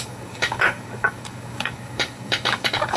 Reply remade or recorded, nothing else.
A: remade